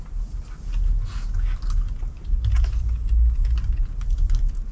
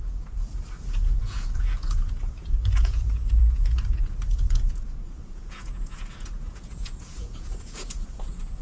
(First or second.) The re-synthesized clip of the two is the second